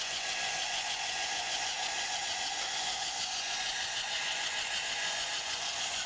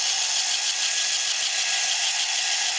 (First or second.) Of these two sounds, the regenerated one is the first